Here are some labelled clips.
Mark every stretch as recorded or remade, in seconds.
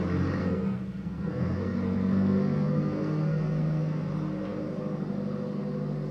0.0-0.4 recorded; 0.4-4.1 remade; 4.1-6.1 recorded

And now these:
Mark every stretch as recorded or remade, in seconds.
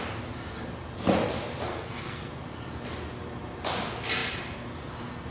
0.0-1.7 recorded; 1.7-2.3 remade; 2.3-5.3 recorded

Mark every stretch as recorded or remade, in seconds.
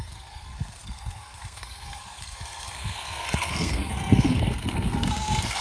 0.0-5.6 remade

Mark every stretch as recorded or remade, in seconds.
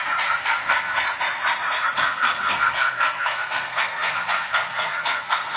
0.0-0.4 recorded; 0.4-1.0 remade; 1.0-2.0 recorded; 2.0-5.6 remade